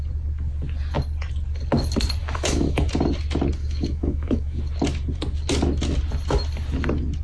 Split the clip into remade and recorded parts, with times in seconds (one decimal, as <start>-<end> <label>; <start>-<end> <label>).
0.0-2.2 recorded; 2.2-2.9 remade; 2.9-3.6 recorded; 3.6-4.6 remade; 4.6-7.2 recorded